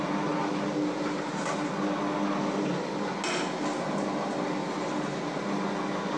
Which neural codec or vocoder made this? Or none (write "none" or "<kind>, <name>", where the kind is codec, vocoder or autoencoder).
none